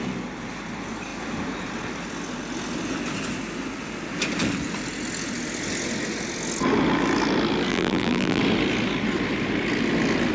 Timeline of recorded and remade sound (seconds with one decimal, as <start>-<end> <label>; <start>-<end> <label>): 0.0-7.7 recorded; 7.7-8.4 remade; 8.4-10.3 recorded

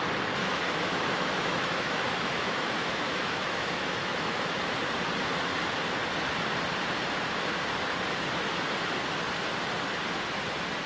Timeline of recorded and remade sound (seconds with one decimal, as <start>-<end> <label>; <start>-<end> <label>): 0.0-0.4 recorded; 0.4-4.6 remade; 4.6-10.9 recorded

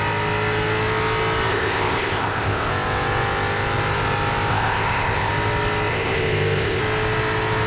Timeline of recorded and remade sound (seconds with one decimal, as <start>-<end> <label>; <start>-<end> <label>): 0.0-1.5 recorded; 1.5-2.7 remade; 2.7-4.5 recorded; 4.5-5.3 remade; 5.3-5.9 recorded; 5.9-6.8 remade; 6.8-7.7 recorded

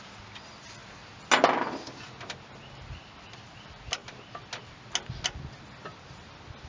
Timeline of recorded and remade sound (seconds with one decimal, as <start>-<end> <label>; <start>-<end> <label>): 0.0-6.7 recorded

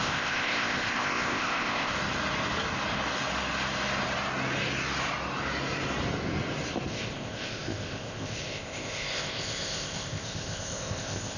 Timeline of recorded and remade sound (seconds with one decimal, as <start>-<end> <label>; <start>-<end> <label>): 0.0-1.9 remade; 1.9-6.9 recorded; 6.9-11.4 remade

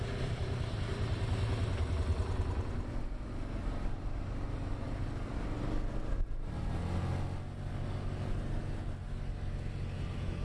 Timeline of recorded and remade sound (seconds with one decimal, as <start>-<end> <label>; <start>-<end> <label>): 0.0-10.4 recorded

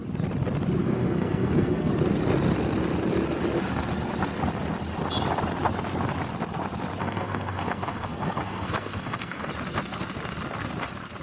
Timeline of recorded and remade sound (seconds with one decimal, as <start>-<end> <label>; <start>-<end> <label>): 0.0-0.8 recorded; 0.8-1.9 remade; 1.9-7.0 recorded; 7.0-9.5 remade; 9.5-11.2 recorded

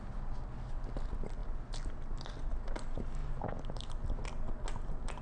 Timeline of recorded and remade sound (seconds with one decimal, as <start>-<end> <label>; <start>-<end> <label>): 0.0-5.2 recorded